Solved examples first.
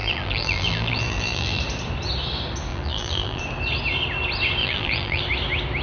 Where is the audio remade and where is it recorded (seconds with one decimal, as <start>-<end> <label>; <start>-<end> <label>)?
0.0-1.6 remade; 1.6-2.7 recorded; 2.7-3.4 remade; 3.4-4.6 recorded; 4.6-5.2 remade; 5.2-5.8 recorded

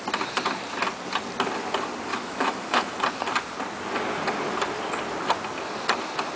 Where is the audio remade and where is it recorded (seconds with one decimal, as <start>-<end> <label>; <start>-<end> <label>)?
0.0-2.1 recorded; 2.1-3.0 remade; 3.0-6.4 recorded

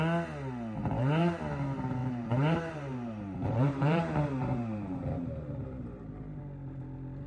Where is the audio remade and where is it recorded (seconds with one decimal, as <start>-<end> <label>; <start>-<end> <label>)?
0.0-0.8 recorded; 0.8-1.4 remade; 1.4-2.0 recorded; 2.0-6.4 remade; 6.4-7.3 recorded

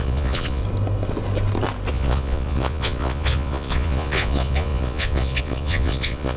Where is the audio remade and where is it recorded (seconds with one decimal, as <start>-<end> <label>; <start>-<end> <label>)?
0.0-0.6 remade; 0.6-1.9 recorded; 1.9-6.4 remade

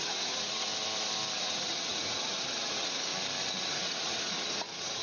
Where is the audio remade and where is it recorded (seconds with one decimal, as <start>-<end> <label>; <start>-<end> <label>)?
0.0-0.7 remade; 0.7-1.4 recorded; 1.4-3.1 remade; 3.1-3.7 recorded; 3.7-5.0 remade